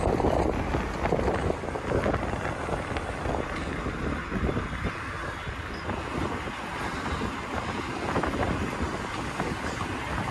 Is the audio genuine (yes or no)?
yes